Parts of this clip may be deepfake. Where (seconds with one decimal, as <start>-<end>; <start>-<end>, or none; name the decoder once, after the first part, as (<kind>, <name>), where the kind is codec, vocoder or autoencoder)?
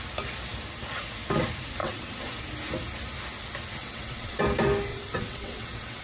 1.8-2.4 (vocoder, WaveNeXt); 3.8-4.4; 4.9-6.0